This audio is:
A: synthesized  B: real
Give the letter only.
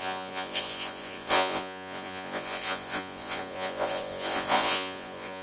A